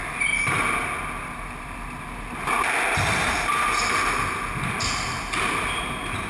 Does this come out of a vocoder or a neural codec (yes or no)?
no